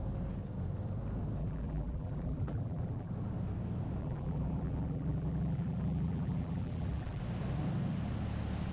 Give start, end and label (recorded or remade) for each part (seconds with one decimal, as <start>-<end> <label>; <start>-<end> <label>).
0.0-1.4 recorded; 1.4-3.1 remade; 3.1-4.0 recorded; 4.0-7.2 remade; 7.2-8.7 recorded